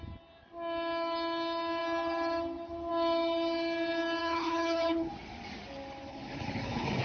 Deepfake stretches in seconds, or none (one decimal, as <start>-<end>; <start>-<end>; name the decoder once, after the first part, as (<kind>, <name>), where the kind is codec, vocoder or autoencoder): 4.2-5.1 (codec, HILCodec); 6.1-7.0

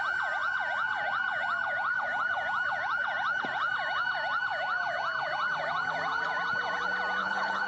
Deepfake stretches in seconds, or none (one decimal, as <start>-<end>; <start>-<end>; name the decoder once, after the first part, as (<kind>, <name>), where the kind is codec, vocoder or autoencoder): 7.2-7.7 (codec, HILCodec)

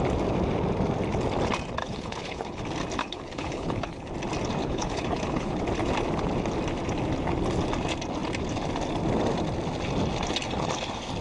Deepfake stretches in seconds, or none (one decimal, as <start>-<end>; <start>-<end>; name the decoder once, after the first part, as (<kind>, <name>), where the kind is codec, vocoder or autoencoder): 1.8-2.6 (codec, HILCodec); 3.0-4.1; 4.6-5.6

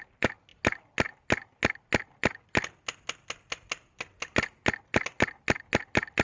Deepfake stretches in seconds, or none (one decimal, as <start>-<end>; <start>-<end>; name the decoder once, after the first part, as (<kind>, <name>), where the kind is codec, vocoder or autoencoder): none

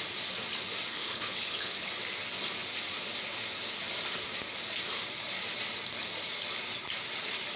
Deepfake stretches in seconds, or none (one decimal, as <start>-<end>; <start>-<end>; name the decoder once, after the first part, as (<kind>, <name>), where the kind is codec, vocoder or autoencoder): 0.9-1.9 (codec, HILCodec)

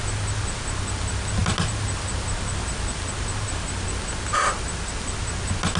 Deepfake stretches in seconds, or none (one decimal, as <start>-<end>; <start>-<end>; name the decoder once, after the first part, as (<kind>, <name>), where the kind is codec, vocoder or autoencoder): none

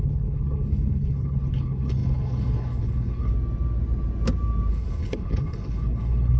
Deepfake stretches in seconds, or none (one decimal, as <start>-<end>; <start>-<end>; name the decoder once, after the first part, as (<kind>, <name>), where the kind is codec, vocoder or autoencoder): 0.0-3.3 (codec, HILCodec); 4.7-6.4